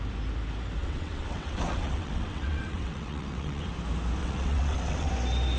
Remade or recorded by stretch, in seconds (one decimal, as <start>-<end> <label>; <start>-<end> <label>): 0.0-0.8 recorded; 0.8-3.7 remade; 3.7-4.2 recorded; 4.2-5.1 remade; 5.1-5.6 recorded